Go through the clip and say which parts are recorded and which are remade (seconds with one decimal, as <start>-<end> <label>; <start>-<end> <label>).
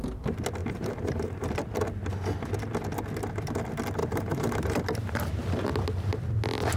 0.0-0.6 recorded; 0.6-1.5 remade; 1.5-4.0 recorded; 4.0-4.8 remade; 4.8-6.8 recorded